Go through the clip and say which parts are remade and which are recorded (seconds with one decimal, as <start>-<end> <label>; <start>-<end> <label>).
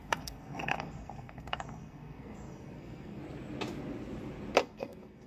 0.0-3.2 remade; 3.2-4.6 recorded; 4.6-5.3 remade